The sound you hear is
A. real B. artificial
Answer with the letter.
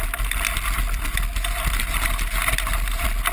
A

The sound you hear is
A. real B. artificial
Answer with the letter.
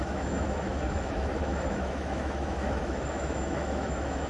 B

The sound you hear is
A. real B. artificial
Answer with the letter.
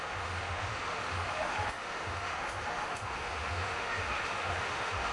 B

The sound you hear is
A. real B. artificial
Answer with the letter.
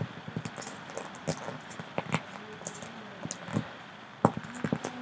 A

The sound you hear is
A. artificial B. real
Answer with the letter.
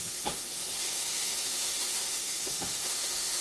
A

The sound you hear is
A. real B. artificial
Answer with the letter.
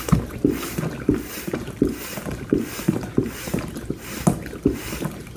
A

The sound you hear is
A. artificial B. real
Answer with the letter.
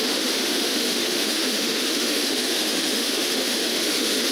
A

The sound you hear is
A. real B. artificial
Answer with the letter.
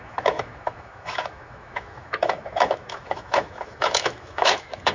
B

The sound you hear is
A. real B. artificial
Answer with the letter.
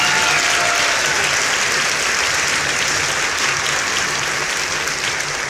A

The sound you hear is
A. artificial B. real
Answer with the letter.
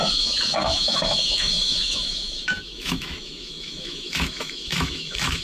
A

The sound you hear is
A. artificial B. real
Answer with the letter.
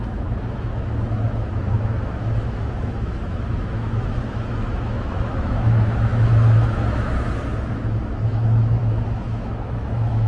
A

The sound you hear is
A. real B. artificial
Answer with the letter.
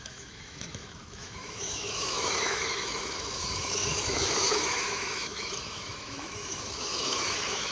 B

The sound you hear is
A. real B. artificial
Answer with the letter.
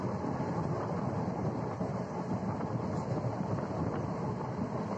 A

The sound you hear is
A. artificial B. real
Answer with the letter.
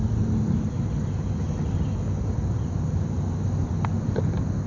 B